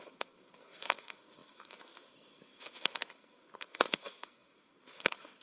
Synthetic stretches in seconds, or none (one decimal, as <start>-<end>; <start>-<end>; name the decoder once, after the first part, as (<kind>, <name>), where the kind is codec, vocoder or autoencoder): 0.0-5.4 (codec, SNAC)